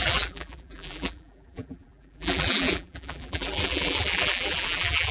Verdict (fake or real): fake